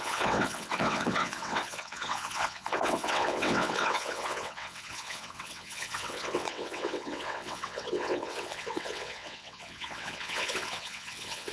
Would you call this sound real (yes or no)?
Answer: no